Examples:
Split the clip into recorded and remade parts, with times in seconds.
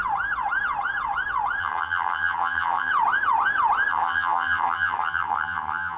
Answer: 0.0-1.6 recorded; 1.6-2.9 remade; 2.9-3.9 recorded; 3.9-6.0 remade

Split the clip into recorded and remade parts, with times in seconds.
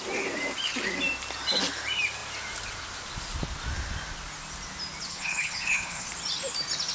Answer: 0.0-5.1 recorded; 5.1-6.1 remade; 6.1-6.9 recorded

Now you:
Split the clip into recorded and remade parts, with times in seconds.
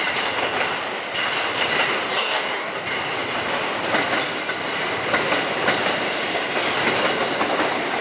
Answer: 0.0-2.1 recorded; 2.1-2.7 remade; 2.7-8.0 recorded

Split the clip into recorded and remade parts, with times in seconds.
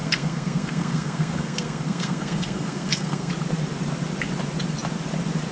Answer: 0.0-3.3 remade; 3.3-5.5 recorded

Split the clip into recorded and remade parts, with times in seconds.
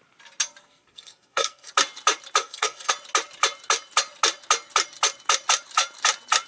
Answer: 0.0-0.6 recorded; 0.6-1.7 remade; 1.7-2.4 recorded; 2.4-2.9 remade; 2.9-6.5 recorded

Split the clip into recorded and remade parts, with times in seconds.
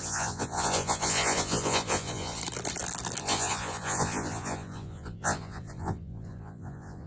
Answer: 0.0-2.4 remade; 2.4-3.2 recorded; 3.2-7.1 remade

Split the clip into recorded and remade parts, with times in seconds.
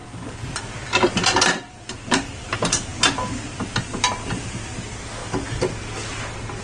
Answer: 0.0-5.2 remade; 5.2-6.6 recorded